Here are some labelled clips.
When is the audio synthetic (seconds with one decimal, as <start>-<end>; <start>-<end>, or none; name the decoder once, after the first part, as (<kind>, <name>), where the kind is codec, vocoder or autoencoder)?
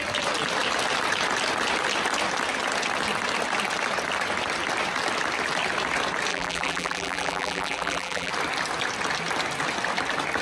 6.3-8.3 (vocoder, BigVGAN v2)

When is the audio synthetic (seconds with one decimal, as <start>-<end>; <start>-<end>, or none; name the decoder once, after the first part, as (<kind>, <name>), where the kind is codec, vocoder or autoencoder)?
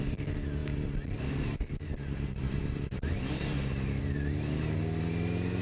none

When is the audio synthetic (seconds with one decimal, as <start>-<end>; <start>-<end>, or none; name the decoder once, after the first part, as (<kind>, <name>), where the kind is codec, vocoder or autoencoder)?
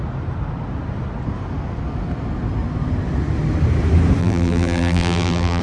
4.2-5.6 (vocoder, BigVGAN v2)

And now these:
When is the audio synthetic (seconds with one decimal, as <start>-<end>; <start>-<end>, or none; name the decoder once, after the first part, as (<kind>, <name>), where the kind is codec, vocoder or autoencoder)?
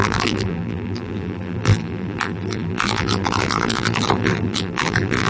0.0-5.3 (vocoder, BigVGAN v2)